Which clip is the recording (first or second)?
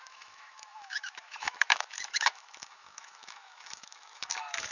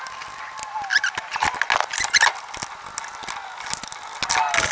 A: second